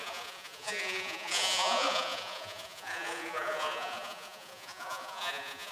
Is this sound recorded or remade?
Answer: remade